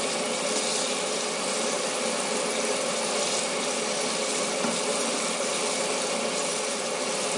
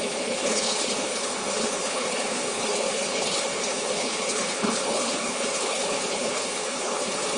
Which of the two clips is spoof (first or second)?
second